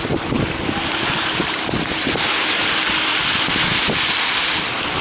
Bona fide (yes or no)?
yes